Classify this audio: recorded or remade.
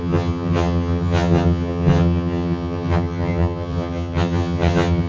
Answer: remade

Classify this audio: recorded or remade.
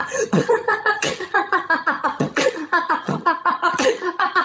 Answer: remade